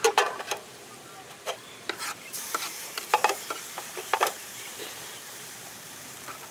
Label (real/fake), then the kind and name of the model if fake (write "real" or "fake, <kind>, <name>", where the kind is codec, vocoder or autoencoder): fake, vocoder, BigVGAN v2